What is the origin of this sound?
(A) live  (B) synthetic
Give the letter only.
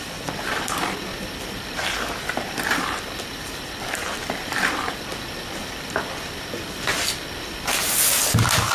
B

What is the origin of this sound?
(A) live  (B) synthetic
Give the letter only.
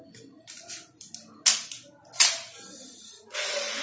A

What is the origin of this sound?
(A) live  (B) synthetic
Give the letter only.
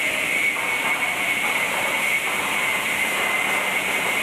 B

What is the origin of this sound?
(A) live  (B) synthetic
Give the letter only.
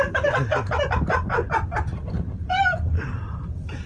B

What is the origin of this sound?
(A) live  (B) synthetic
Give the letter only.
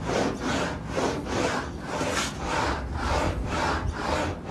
A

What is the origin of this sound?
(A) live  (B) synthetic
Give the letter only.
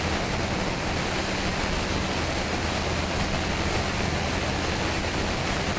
A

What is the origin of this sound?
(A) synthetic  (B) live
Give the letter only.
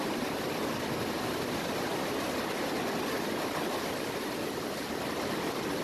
A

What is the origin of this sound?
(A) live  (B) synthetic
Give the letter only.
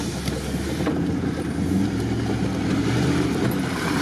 A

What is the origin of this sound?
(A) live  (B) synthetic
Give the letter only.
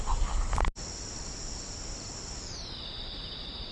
A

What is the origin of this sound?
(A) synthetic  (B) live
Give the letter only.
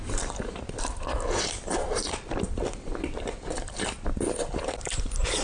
A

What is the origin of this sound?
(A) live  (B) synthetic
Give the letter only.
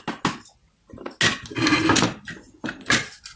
A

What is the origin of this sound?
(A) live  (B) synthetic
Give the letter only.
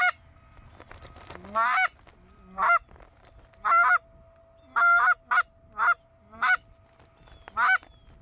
A